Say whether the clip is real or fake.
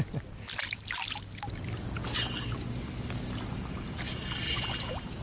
real